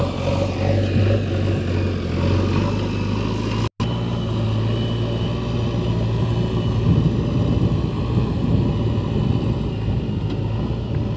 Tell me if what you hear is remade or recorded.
recorded